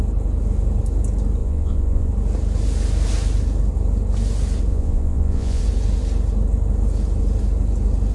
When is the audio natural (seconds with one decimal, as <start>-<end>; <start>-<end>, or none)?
0.0-1.4; 2.1-4.7; 5.6-8.1